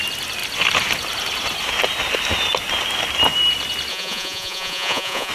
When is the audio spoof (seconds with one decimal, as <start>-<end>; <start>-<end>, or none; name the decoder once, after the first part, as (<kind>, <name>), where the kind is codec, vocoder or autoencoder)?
3.9-5.3 (vocoder, Vocos)